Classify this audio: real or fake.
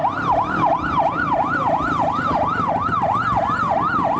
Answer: real